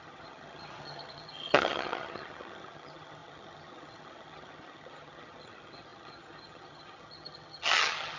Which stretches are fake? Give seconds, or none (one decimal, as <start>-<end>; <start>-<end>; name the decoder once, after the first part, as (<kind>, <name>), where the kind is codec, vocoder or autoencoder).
0.0-8.2 (vocoder, HiFi-GAN)